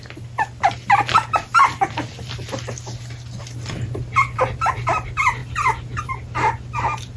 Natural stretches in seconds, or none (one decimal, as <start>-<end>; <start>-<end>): 0.0-7.2